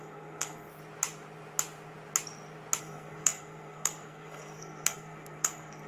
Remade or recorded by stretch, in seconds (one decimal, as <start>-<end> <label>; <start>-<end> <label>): 0.0-0.7 remade; 0.7-2.8 recorded; 2.8-5.9 remade